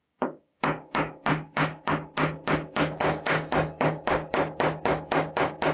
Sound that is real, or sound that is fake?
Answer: fake